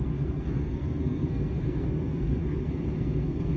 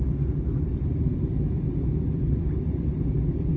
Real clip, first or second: second